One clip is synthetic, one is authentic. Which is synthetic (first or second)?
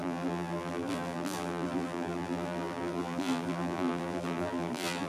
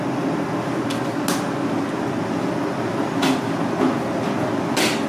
first